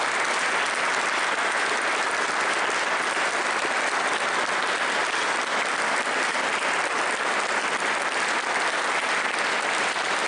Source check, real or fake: real